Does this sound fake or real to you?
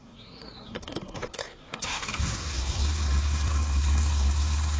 fake